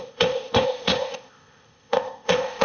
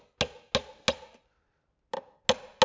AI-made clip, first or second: first